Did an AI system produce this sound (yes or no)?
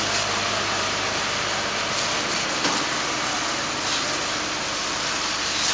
no